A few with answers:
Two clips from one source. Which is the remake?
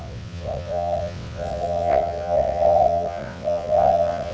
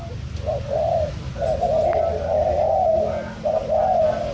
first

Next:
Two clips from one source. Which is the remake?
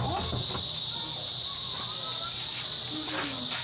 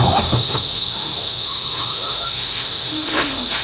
second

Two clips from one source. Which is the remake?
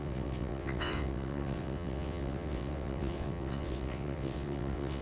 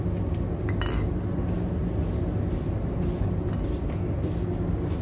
first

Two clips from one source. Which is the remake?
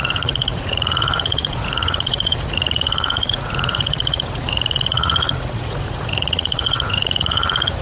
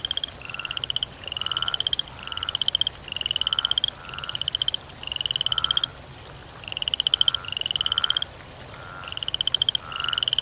first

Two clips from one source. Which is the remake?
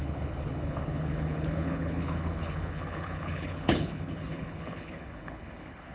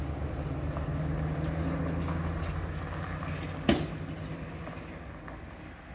first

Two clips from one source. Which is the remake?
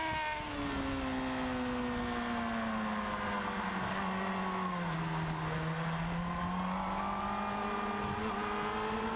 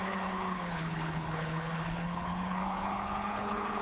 second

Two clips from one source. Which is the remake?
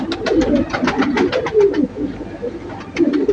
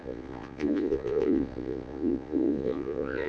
second